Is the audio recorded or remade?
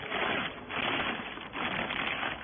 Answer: recorded